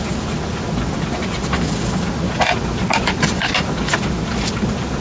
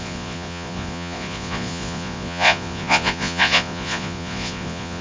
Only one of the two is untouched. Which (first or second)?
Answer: first